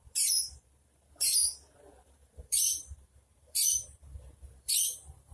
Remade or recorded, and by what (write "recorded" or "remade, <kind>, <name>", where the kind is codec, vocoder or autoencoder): remade, vocoder, BigVGAN v2